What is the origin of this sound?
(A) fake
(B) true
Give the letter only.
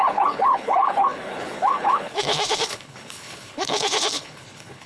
A